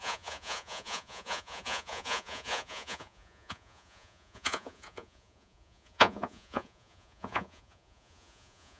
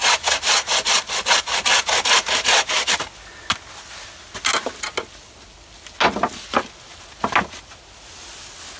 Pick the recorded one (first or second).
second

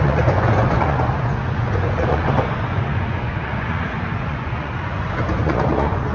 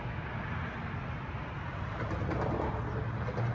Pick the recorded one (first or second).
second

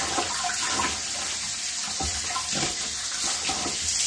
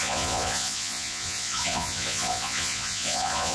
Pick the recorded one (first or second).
first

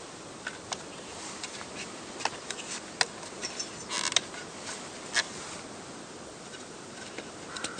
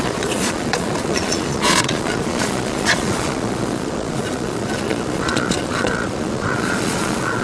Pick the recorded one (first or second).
first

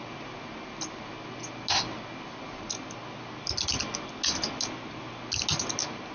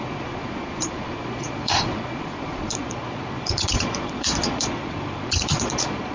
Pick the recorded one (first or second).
first